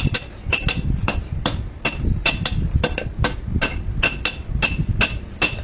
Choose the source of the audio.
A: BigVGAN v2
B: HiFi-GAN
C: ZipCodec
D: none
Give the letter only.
D